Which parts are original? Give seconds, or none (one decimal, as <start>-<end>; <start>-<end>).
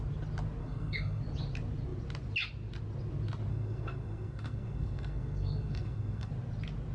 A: 0.0-0.6; 1.2-3.5; 6.3-6.9